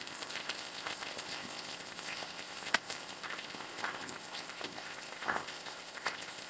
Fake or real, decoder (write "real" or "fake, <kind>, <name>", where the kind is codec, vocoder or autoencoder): fake, codec, ZipCodec